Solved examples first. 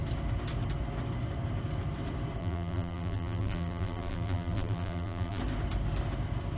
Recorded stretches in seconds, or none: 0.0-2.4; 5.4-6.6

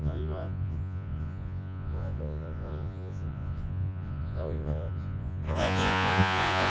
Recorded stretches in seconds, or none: none

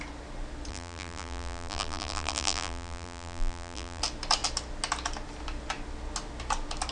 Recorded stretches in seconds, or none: 0.0-0.7; 4.0-6.9

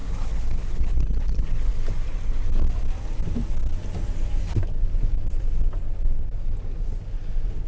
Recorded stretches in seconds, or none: 1.7-7.7

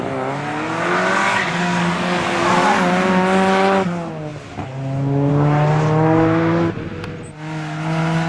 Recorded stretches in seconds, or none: 0.0-1.2; 2.5-8.3

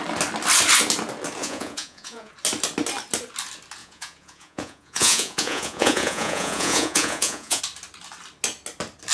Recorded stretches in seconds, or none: 0.0-1.4; 2.3-3.8; 7.6-9.1